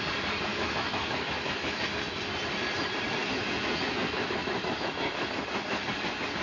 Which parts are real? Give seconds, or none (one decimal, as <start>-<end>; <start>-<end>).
0.0-0.5; 1.8-3.2; 5.3-6.4